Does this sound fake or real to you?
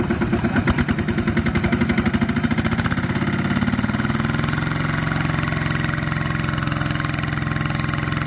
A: real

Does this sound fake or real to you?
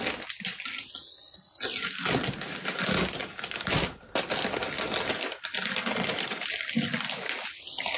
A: real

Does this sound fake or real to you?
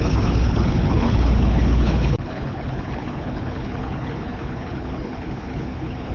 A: fake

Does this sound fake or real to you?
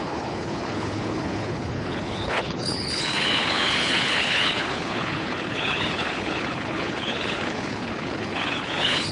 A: fake